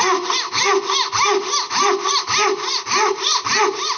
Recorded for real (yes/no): yes